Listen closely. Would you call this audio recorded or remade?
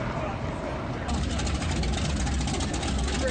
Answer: recorded